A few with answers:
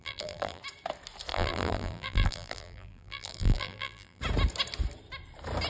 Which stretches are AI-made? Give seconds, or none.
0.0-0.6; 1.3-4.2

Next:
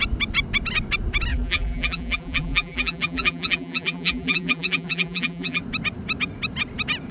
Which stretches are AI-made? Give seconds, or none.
1.3-5.6